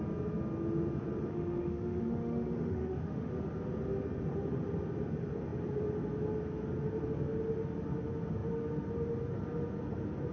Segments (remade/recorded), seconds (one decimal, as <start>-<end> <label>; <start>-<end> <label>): 0.0-1.3 recorded; 1.3-3.3 remade; 3.3-10.3 recorded